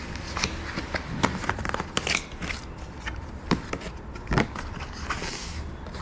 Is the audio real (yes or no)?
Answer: yes